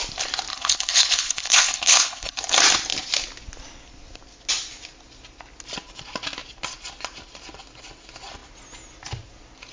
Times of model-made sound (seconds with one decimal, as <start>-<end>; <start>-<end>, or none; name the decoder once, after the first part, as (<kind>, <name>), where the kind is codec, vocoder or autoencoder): 0.5-2.4 (codec, HILCodec)